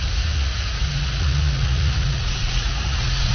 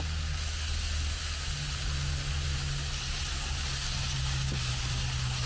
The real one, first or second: second